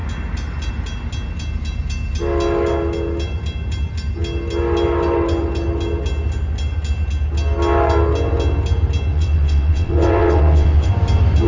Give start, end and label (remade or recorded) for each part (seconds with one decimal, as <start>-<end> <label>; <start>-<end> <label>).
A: 0.0-9.1 recorded; 9.1-10.9 remade; 10.9-11.5 recorded